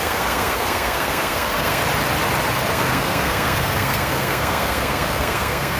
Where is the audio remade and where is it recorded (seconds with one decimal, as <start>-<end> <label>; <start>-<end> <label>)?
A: 0.0-1.8 remade; 1.8-2.7 recorded; 2.7-5.8 remade